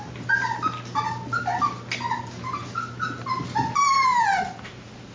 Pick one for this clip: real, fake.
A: real